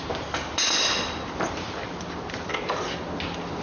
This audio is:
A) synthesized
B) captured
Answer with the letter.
B